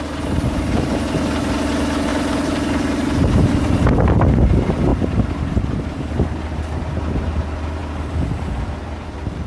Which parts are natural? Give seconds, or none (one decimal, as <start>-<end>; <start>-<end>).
0.0-2.1; 4.5-4.9; 6.1-9.5